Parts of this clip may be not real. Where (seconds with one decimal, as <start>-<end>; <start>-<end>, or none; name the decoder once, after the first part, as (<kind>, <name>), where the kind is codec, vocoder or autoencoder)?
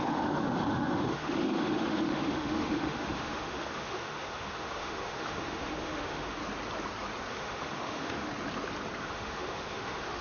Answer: 0.0-6.4 (autoencoder, DAC-VAE); 7.3-8.3; 9.0-10.2